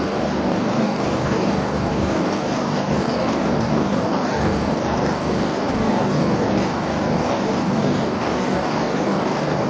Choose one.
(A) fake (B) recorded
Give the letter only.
A